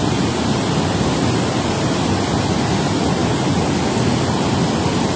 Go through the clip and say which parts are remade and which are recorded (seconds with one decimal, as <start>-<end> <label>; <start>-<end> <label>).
0.0-5.2 recorded

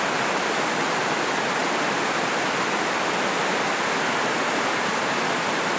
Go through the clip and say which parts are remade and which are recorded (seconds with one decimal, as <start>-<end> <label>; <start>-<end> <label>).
0.0-5.0 recorded; 5.0-5.8 remade

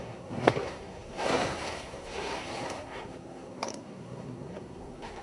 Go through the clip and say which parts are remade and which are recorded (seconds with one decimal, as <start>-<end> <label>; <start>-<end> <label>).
0.0-5.2 remade